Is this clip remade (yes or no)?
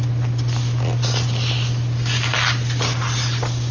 no